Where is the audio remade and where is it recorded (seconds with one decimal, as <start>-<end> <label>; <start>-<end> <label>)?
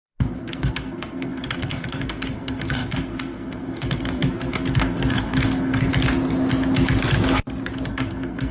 0.0-5.9 remade; 5.9-7.9 recorded; 7.9-8.5 remade